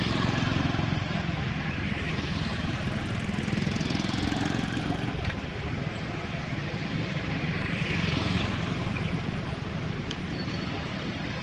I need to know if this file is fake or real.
fake